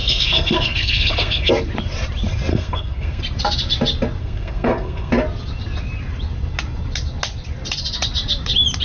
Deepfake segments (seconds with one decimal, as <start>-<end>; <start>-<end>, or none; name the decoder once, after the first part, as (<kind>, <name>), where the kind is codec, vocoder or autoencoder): 0.0-1.5 (codec, SNAC); 2.5-3.2; 4.2-5.1